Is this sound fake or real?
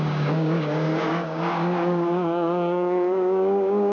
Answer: fake